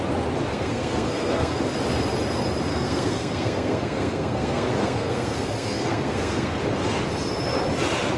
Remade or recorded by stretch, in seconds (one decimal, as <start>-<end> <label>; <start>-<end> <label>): 0.0-0.5 recorded; 0.5-1.6 remade; 1.6-2.7 recorded; 2.7-6.6 remade; 6.6-8.2 recorded